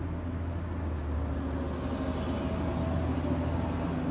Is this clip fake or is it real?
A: real